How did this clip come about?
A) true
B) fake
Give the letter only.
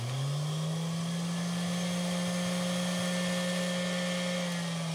A